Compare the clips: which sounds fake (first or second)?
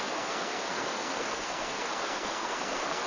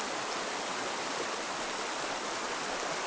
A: first